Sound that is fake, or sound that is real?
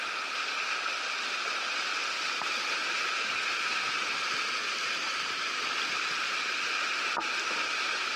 real